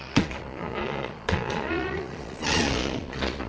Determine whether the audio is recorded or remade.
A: remade